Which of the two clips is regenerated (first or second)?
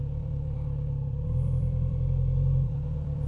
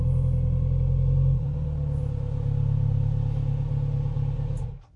first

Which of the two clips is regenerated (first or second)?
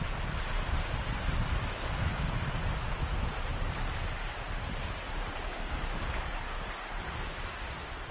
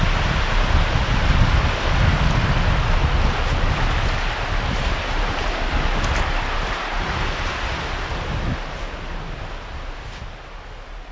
first